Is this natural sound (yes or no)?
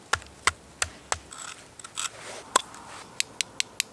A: yes